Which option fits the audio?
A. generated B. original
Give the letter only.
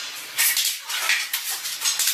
B